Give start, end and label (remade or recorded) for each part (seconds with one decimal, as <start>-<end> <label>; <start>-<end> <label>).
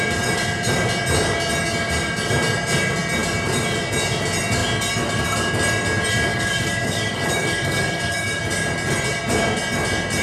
0.0-6.3 recorded; 6.3-8.4 remade; 8.4-10.2 recorded